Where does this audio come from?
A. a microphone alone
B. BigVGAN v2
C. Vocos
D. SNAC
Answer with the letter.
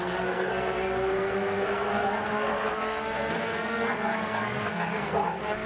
D